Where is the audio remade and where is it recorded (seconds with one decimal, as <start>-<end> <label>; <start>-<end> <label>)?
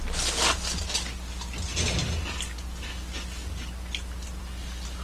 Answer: 0.0-5.0 recorded